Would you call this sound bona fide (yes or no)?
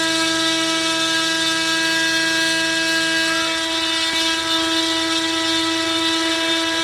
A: yes